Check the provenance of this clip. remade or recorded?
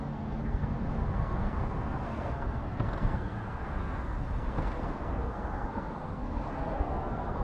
remade